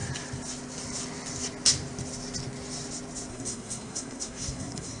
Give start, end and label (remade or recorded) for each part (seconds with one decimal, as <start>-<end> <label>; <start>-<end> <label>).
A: 0.0-3.3 recorded; 3.3-5.0 remade